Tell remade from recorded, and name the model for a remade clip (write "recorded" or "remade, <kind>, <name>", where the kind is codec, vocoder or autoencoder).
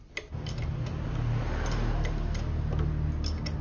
recorded